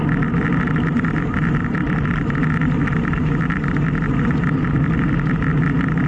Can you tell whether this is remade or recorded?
recorded